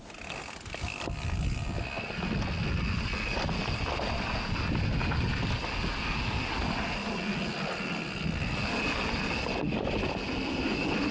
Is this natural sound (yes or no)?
yes